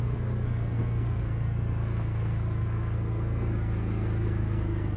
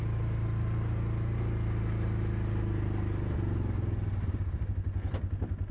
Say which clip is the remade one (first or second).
first